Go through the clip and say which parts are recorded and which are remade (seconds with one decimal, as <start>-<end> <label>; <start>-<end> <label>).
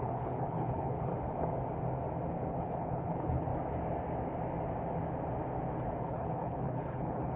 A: 0.0-1.1 remade; 1.1-2.5 recorded; 2.5-3.5 remade; 3.5-6.0 recorded; 6.0-7.4 remade